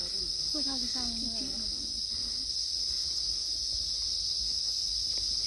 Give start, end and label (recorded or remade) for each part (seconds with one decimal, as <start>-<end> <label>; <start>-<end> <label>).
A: 0.0-0.5 recorded; 0.5-0.9 remade; 0.9-4.2 recorded; 4.2-4.9 remade; 4.9-5.5 recorded